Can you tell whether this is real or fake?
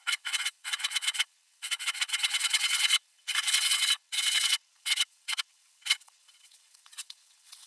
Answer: fake